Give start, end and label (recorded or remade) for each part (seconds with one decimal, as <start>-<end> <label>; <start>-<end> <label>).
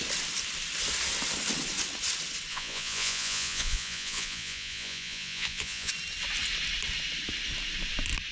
0.0-2.5 recorded; 2.5-5.9 remade; 5.9-8.3 recorded